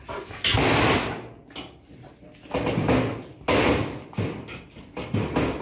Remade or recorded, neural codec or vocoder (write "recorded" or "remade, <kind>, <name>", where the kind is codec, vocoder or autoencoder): recorded